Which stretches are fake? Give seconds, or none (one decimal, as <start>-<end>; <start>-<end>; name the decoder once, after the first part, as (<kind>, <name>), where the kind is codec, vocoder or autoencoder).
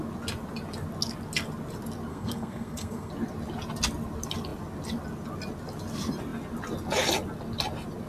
2.1-3.1 (codec, SNAC)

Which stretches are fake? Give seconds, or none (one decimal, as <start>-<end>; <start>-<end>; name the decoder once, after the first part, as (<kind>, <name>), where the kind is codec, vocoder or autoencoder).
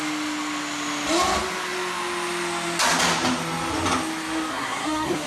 4.5-5.3 (codec, SNAC)